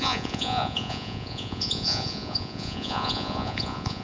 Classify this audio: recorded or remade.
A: remade